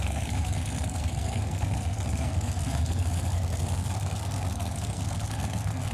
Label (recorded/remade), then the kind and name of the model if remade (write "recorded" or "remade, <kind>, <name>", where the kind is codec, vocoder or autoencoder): remade, codec, SNAC